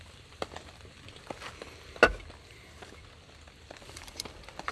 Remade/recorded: recorded